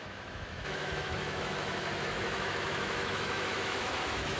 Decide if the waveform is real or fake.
fake